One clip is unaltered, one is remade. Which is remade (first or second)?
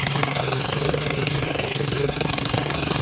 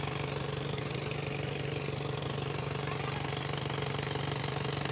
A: first